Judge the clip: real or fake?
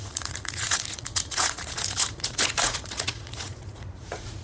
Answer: fake